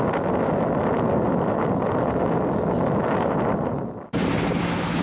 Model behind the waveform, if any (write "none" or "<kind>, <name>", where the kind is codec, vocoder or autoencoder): none